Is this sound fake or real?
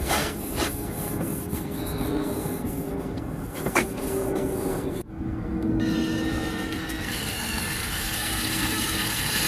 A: fake